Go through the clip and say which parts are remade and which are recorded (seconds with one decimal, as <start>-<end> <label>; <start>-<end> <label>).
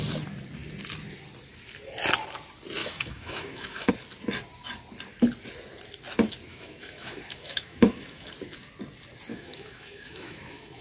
0.0-2.8 recorded; 2.8-3.9 remade; 3.9-6.5 recorded; 6.5-8.3 remade; 8.3-9.3 recorded; 9.3-10.8 remade